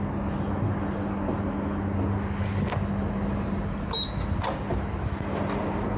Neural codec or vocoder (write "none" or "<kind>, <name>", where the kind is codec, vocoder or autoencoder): none